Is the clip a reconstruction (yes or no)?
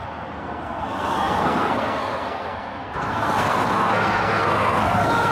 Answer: yes